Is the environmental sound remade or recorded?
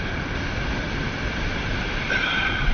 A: recorded